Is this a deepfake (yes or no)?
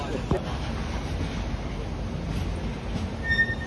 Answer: no